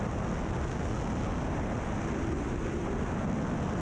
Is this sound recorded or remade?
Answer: recorded